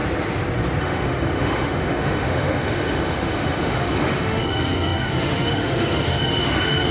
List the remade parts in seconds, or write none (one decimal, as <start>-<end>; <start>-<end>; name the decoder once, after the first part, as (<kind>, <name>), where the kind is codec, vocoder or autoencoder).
0.8-6.9 (autoencoder, DAC-VAE)